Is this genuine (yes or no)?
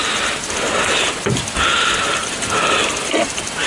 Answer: yes